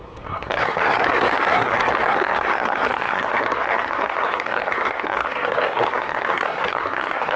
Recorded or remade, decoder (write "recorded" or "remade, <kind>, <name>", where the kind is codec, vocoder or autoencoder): remade, codec, SNAC